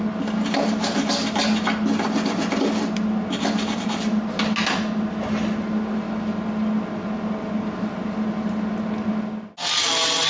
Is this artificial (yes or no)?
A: no